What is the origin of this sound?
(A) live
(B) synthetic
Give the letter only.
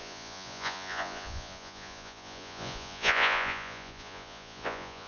B